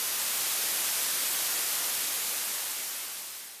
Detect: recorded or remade recorded